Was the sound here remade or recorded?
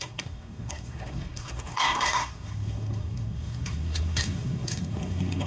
remade